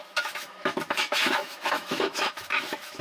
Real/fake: fake